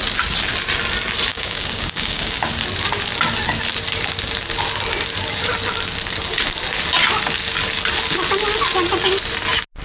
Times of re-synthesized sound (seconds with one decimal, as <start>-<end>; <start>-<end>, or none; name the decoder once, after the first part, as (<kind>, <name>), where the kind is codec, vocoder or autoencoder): 1.3-2.5 (codec, DAC)

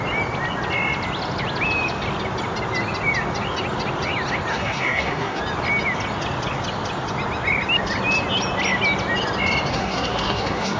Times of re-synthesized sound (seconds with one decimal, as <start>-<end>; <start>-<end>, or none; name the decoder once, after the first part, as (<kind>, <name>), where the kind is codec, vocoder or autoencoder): 4.5-5.4 (codec, SNAC); 9.7-10.8

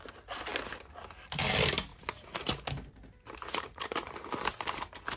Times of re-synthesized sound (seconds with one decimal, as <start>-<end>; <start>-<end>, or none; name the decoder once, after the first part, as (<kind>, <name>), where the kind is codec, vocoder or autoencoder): 1.9-2.5 (vocoder, Vocos); 3.5-4.1

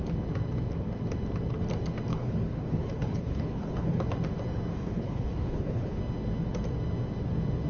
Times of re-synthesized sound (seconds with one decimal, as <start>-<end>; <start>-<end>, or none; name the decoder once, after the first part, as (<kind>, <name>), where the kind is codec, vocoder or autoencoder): 2.1-4.0 (codec, HILCodec); 4.7-6.0

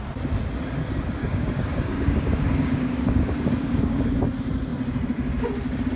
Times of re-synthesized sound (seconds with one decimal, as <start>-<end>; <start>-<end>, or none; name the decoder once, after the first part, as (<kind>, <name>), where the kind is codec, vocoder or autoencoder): 1.2-4.2 (codec, DAC)

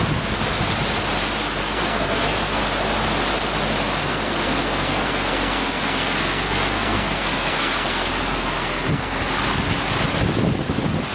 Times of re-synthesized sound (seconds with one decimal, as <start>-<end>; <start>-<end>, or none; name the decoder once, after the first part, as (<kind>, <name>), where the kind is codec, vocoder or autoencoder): 1.6-2.6 (codec, SNAC); 4.0-9.2

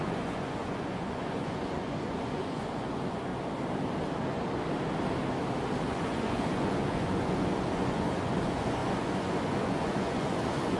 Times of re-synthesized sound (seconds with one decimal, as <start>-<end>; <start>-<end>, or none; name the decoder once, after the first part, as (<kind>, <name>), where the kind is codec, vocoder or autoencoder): 0.0-3.3 (vocoder, Vocos); 5.9-10.8